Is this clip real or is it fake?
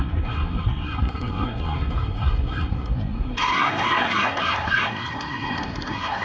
fake